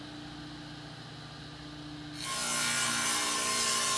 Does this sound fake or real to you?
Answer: real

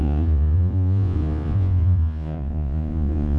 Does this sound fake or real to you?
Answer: fake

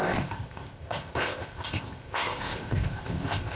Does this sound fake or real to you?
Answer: fake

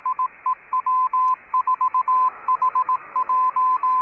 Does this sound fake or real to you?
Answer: fake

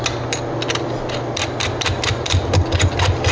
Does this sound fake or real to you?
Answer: real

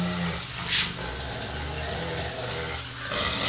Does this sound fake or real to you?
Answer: real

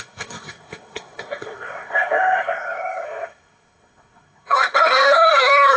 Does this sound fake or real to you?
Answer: fake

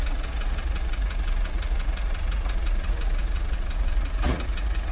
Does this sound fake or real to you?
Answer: fake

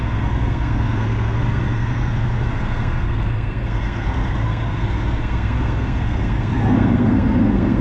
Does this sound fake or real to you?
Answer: fake